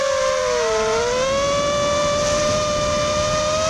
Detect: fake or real real